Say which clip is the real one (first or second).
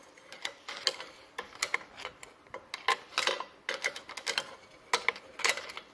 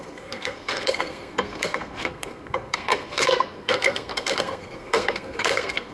first